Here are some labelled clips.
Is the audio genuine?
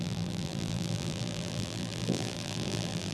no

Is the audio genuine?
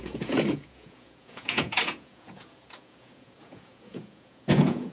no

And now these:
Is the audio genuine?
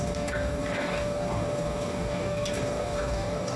no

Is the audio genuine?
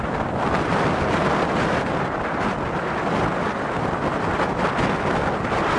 yes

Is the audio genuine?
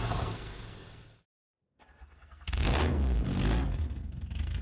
no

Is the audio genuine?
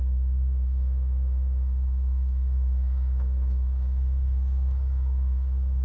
no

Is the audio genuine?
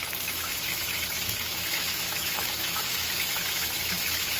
no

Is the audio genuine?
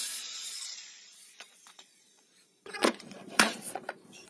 no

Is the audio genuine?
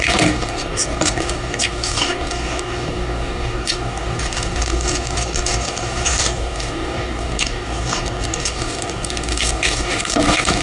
no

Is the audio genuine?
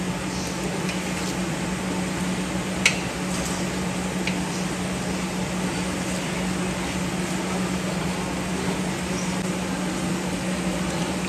yes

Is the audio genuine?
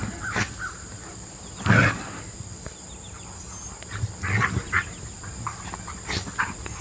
yes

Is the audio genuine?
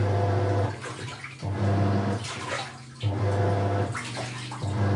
yes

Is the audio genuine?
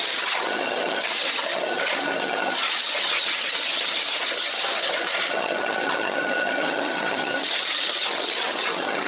no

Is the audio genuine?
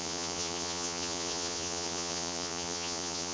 no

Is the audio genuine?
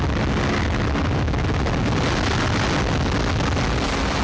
yes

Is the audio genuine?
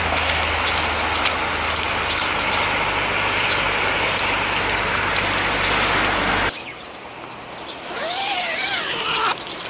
yes